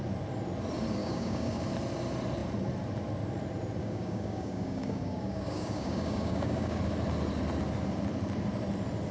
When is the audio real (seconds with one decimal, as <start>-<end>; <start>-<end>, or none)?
0.0-1.0; 1.6-3.8; 6.8-9.1